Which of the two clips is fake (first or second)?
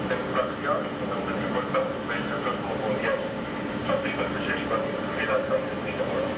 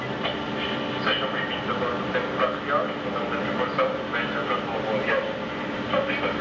first